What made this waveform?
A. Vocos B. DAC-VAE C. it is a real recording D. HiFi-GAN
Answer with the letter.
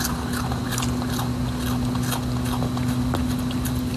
C